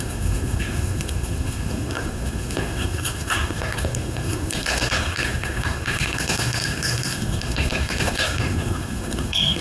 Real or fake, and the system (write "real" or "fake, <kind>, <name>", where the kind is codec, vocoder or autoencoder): fake, codec, SNAC